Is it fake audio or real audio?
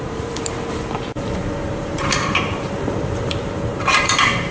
fake